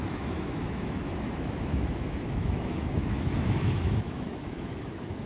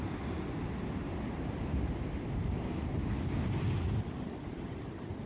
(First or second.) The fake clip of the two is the first